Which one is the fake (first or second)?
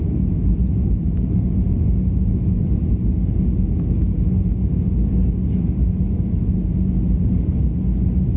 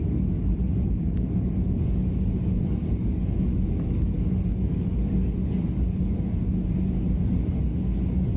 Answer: second